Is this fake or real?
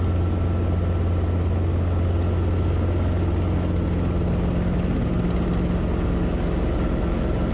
real